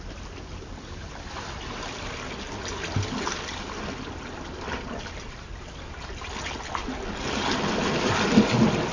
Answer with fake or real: real